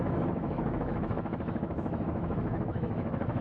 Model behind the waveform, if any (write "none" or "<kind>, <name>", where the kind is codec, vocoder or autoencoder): autoencoder, DAC-VAE